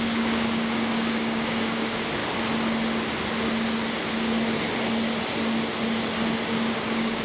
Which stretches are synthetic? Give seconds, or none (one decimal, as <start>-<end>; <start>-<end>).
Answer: 0.0-2.2; 6.5-7.2